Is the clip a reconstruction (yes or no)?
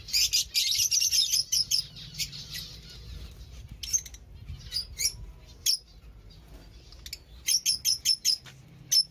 no